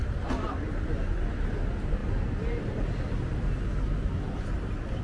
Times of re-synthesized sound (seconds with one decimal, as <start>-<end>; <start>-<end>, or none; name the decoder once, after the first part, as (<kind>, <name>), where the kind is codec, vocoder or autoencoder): none